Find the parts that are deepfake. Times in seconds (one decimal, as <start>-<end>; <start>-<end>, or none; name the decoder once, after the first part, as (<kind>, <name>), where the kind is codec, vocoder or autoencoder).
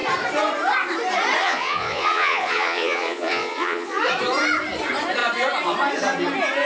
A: 1.4-4.0 (vocoder, Vocos)